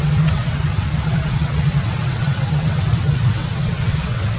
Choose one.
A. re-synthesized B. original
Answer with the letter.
A